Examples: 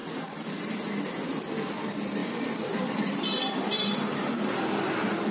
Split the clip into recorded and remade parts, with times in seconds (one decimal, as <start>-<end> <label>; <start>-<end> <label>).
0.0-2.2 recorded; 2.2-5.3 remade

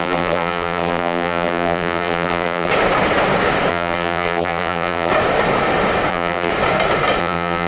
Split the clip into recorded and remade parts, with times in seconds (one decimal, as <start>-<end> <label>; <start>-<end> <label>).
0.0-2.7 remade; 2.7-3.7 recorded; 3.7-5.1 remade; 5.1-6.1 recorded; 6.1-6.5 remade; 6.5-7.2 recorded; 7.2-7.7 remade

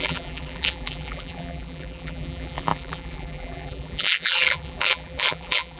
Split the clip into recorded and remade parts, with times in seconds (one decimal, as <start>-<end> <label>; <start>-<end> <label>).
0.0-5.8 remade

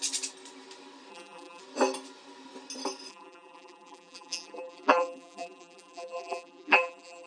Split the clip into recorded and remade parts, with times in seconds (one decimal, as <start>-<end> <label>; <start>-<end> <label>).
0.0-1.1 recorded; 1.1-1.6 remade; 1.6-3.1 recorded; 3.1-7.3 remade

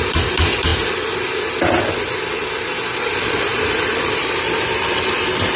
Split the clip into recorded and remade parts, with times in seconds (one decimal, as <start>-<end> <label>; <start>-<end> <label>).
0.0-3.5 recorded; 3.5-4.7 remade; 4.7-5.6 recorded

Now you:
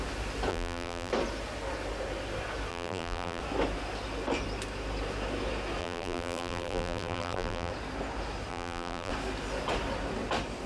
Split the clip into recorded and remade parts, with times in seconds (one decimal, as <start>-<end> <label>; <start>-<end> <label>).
0.0-0.5 recorded; 0.5-1.1 remade; 1.1-2.7 recorded; 2.7-3.4 remade; 3.4-5.8 recorded; 5.8-7.7 remade; 7.7-8.5 recorded; 8.5-9.1 remade; 9.1-10.7 recorded